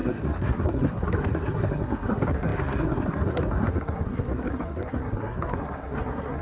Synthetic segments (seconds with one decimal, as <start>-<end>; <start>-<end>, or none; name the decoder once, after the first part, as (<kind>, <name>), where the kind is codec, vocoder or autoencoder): 0.0-6.4 (codec, SNAC)